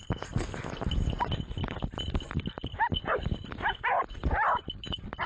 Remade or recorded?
recorded